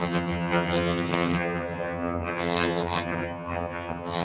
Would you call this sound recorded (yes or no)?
no